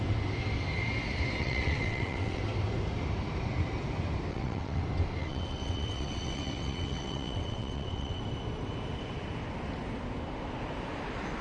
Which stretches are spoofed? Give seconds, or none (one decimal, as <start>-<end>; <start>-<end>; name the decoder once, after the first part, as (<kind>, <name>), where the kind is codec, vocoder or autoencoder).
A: 1.4-2.4 (vocoder, WaveNeXt); 4.3-4.8; 5.2-8.2